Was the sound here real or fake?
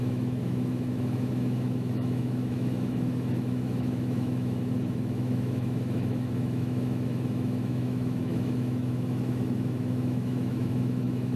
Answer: fake